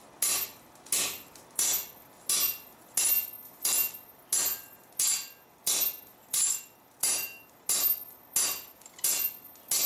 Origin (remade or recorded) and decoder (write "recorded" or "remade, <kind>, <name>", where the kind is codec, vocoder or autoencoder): recorded